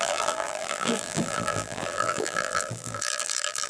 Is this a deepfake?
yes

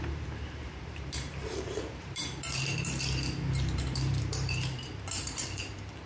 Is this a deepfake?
yes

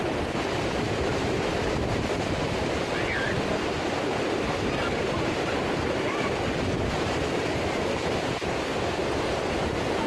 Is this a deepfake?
no